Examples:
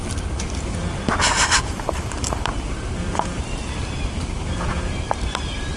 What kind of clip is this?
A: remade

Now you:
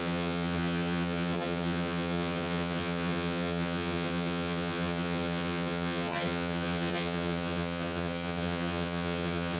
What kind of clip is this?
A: remade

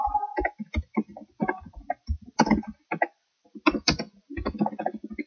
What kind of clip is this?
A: recorded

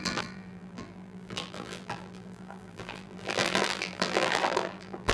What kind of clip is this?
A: remade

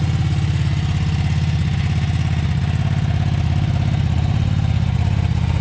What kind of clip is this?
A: recorded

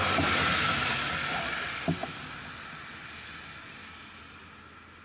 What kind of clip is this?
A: recorded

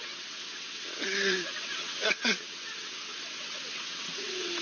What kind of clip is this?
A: remade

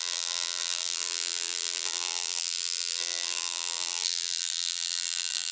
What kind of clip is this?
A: remade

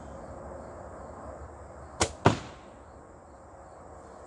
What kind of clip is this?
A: recorded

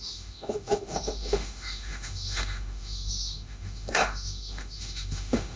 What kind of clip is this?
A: remade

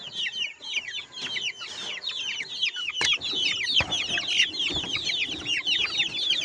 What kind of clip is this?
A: recorded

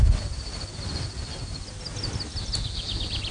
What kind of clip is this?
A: recorded